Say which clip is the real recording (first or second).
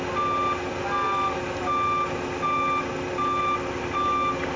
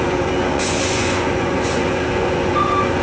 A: first